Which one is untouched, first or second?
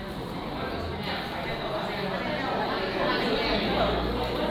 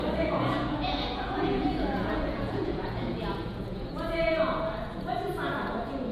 first